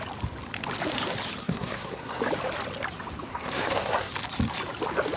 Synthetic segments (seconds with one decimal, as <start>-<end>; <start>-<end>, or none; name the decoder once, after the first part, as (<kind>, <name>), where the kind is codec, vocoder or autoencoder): 1.4-2.2 (codec, SNAC); 3.3-4.1